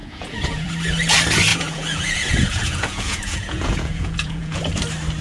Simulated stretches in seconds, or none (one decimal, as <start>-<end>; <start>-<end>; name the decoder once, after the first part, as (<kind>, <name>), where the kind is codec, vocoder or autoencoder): 0.0-0.7 (vocoder, Vocos); 1.5-4.6